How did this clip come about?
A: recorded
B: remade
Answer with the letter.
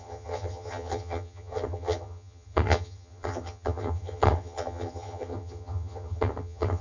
B